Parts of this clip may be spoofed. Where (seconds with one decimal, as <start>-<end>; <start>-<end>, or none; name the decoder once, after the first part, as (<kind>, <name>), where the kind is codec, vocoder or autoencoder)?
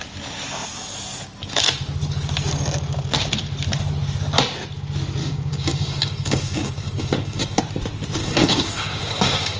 5.2-7.6 (codec, DAC); 8.2-9.6